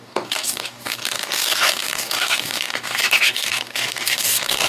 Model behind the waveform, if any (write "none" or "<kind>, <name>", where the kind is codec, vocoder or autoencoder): codec, DAC